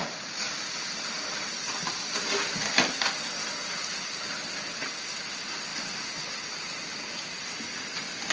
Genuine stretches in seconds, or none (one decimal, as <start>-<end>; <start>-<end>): 0.7-3.4; 4.1-8.3